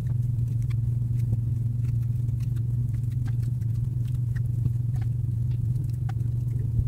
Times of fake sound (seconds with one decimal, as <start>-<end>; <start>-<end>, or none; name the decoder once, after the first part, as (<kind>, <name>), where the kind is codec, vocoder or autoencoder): 0.0-1.3 (vocoder, BigVGAN v2); 2.8-6.1